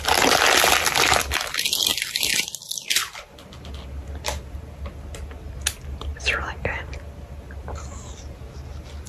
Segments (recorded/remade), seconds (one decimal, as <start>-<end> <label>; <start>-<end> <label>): 0.0-9.1 recorded